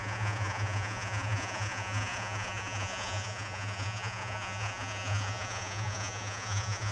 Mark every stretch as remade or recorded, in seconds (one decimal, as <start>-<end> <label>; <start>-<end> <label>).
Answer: 0.0-6.9 remade

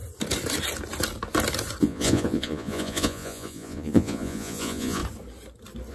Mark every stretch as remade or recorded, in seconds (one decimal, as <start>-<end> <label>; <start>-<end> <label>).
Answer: 0.0-1.8 recorded; 1.8-5.0 remade; 5.0-5.9 recorded

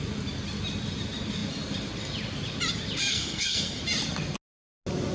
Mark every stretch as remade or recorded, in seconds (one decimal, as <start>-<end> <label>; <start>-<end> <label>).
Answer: 0.0-3.0 recorded; 3.0-3.8 remade; 3.8-5.1 recorded

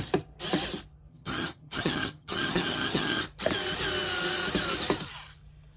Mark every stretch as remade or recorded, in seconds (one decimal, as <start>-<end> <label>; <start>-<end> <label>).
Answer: 0.0-1.1 recorded; 1.1-3.2 remade; 3.2-5.8 recorded

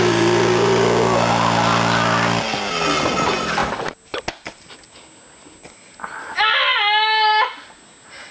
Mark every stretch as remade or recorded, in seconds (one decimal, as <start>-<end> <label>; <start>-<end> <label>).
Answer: 0.0-8.3 recorded

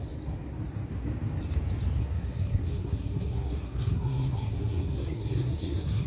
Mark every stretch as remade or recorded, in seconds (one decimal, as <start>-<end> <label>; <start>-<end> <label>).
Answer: 0.0-2.0 recorded; 2.0-6.1 remade

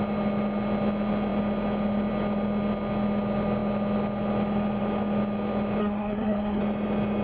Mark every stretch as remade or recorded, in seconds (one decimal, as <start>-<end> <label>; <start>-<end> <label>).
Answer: 0.0-5.8 recorded; 5.8-6.6 remade; 6.6-7.2 recorded

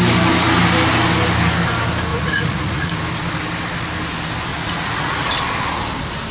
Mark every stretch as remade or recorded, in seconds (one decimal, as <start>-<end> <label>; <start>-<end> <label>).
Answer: 0.0-2.1 recorded; 2.1-2.9 remade; 2.9-4.5 recorded; 4.5-5.3 remade; 5.3-6.3 recorded